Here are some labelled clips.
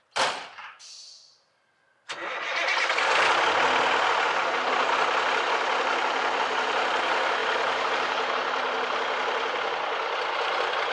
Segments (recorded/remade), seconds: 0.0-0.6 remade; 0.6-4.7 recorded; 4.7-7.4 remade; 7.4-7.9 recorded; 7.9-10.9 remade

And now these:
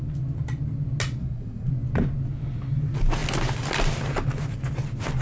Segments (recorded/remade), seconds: 0.0-1.2 recorded; 1.2-1.7 remade; 1.7-5.2 recorded

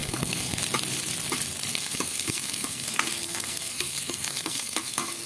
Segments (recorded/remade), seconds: 0.0-0.6 remade; 0.6-1.7 recorded; 1.7-5.3 remade

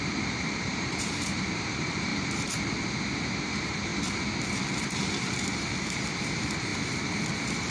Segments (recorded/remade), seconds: 0.0-2.1 remade; 2.1-3.5 recorded; 3.5-3.9 remade; 3.9-4.6 recorded; 4.6-6.7 remade; 6.7-7.7 recorded

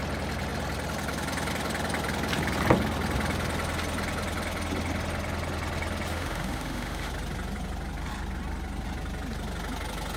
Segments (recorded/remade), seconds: 0.0-6.1 recorded; 6.1-7.1 remade; 7.1-10.2 recorded

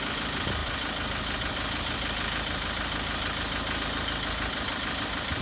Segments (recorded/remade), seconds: 0.0-5.4 recorded

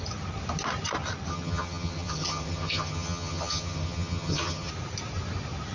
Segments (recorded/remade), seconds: 0.0-1.3 recorded; 1.3-4.7 remade; 4.7-5.7 recorded

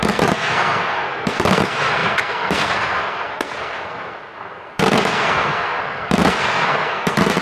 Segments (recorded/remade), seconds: 0.0-7.4 remade